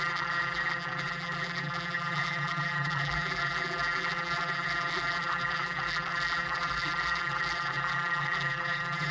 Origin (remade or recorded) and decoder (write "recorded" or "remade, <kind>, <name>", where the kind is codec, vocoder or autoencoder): remade, vocoder, BigVGAN v2